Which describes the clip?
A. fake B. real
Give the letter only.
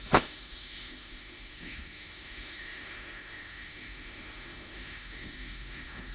A